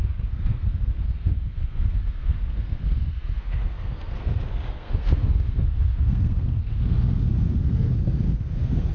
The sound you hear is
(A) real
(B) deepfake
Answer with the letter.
B